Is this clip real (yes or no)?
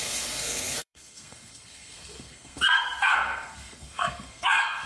no